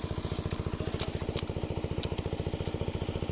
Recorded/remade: recorded